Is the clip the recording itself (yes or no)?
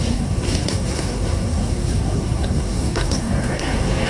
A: no